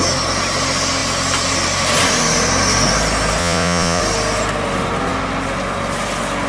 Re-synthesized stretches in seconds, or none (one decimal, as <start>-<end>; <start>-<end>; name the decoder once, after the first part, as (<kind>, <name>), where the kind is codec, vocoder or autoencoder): 3.4-4.0 (vocoder, Vocos)